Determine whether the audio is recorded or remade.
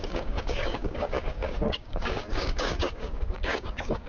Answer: remade